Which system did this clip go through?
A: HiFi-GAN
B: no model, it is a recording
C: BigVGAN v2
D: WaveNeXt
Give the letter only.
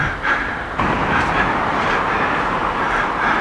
C